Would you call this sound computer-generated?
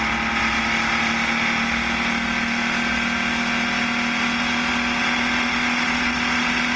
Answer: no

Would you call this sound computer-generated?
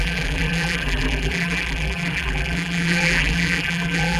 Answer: yes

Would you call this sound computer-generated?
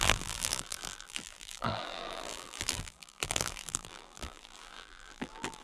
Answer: yes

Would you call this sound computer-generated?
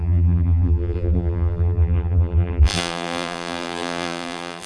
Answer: yes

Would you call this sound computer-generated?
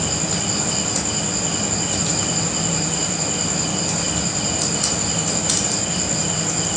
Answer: no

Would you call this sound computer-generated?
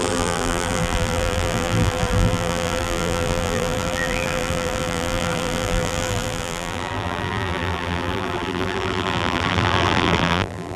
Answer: yes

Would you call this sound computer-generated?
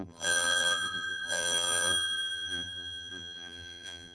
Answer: yes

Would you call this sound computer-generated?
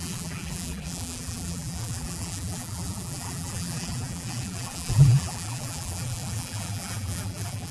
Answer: yes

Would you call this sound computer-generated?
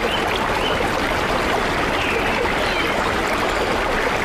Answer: no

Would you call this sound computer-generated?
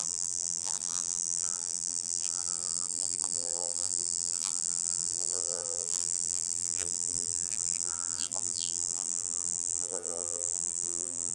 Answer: yes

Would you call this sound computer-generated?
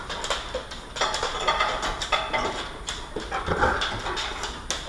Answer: no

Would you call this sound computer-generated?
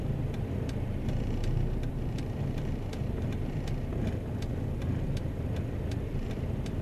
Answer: yes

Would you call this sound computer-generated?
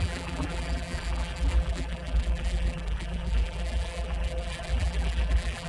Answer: yes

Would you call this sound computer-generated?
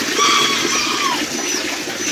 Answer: no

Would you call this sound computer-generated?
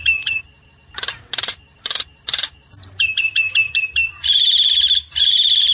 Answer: yes